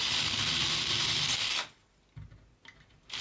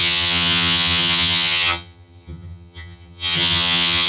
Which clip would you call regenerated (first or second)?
second